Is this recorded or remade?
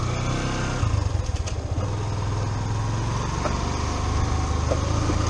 recorded